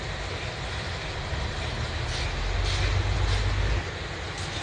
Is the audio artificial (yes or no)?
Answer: no